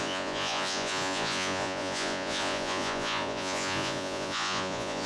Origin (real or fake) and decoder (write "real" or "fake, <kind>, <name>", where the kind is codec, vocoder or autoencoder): fake, vocoder, Vocos